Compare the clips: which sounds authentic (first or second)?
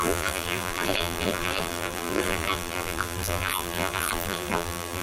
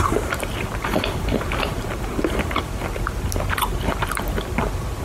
second